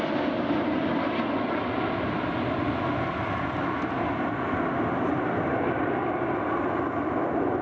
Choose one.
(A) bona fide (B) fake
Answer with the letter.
A